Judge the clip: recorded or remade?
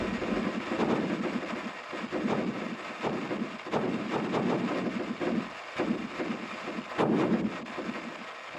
recorded